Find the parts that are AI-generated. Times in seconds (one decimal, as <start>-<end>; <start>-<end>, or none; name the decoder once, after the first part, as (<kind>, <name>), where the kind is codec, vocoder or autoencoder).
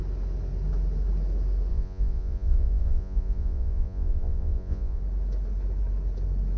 1.7-5.0 (vocoder, Vocos)